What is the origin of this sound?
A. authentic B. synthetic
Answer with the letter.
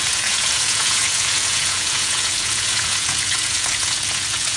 B